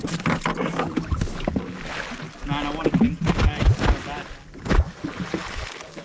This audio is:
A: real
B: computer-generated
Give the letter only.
A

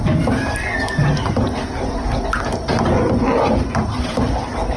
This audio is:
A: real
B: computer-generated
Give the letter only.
A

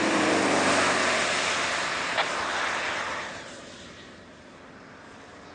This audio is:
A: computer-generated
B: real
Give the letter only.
B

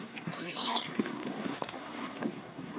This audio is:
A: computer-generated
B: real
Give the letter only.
A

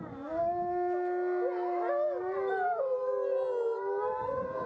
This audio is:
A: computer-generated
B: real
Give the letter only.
B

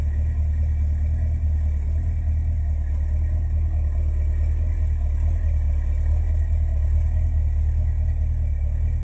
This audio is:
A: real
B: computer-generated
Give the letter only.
A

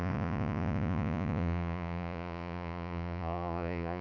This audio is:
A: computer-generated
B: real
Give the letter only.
A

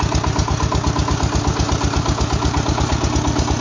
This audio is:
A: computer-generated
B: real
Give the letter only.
B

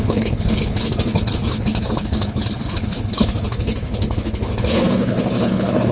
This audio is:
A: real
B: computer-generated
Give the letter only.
B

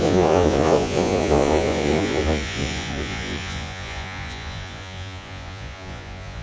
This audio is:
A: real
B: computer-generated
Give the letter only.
B